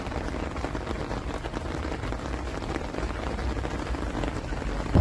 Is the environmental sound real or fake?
real